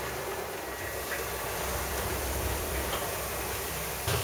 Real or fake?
fake